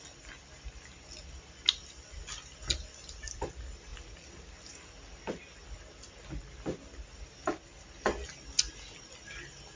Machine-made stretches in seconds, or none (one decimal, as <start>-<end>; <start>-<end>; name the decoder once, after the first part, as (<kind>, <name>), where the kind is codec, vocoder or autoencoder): none